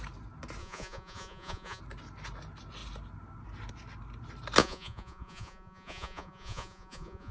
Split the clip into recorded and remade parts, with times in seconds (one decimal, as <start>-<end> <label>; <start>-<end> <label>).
0.0-0.6 recorded; 0.6-1.8 remade; 1.8-4.6 recorded; 4.6-7.3 remade